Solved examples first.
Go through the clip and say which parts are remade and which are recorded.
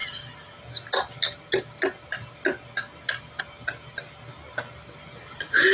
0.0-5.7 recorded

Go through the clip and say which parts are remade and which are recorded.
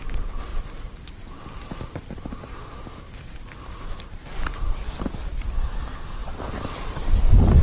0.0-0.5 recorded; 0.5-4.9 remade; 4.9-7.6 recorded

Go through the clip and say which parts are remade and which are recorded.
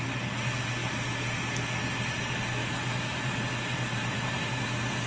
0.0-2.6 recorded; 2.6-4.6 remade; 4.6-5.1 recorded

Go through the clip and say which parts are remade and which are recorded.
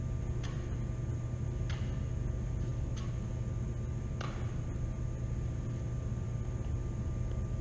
0.0-7.6 recorded